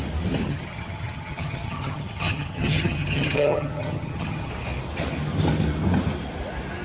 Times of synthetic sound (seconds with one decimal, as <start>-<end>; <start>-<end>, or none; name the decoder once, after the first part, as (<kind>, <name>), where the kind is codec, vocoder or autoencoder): 0.4-4.5 (vocoder, HiFi-GAN)